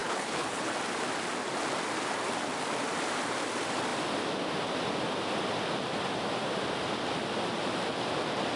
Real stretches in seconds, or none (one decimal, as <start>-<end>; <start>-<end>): 0.7-8.6